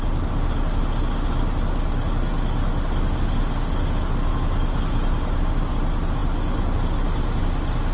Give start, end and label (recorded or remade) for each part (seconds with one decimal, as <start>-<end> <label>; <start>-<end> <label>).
0.0-7.9 recorded